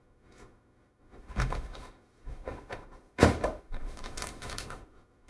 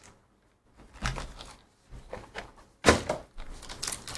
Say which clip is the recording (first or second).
second